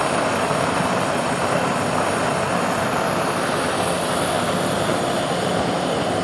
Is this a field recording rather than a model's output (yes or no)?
yes